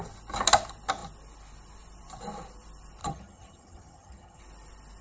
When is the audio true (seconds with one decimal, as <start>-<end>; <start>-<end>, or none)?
0.0-3.0; 4.4-5.0